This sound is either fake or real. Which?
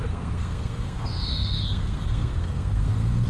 fake